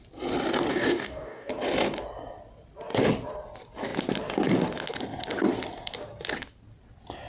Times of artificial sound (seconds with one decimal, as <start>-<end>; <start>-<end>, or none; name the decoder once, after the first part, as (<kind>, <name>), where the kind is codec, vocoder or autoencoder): 0.7-1.5 (codec, DAC)